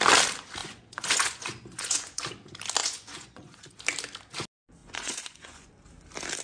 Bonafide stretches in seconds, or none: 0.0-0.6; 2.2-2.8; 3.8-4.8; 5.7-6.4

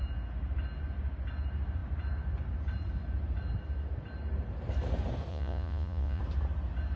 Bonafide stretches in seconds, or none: 0.0-5.3; 6.2-7.0

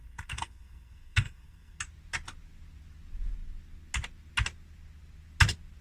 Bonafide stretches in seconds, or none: 1.8-5.8

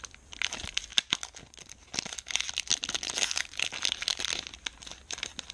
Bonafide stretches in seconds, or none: 0.0-5.5

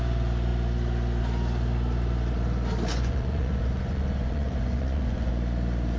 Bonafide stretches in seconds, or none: 0.0-2.9; 5.3-6.0

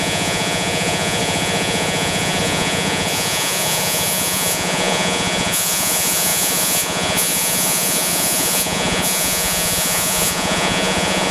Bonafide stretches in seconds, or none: none

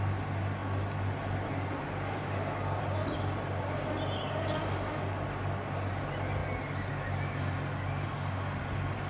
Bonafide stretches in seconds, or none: 0.0-9.1

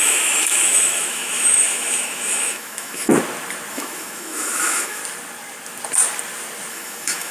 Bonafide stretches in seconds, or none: 3.1-3.7; 5.0-6.7